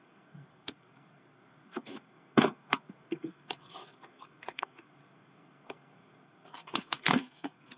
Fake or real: fake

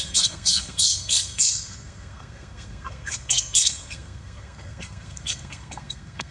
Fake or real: fake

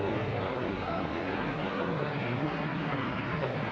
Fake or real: fake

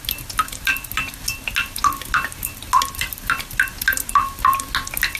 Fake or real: real